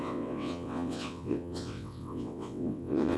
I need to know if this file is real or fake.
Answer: fake